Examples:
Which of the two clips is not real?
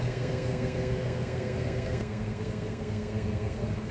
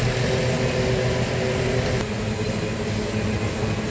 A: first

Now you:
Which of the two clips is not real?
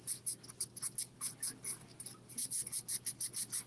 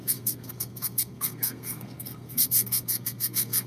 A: second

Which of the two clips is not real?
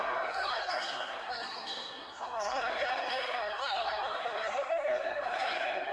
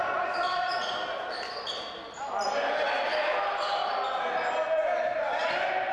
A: first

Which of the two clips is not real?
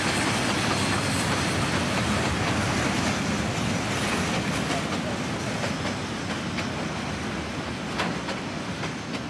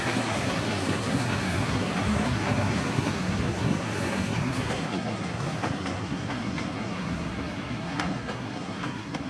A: second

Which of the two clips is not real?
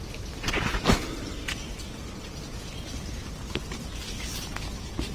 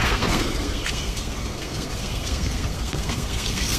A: second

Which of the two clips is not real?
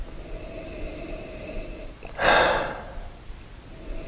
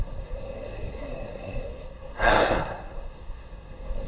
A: second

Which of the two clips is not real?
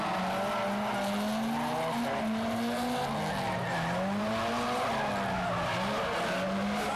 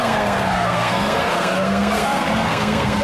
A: second